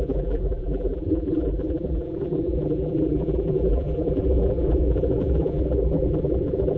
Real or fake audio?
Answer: fake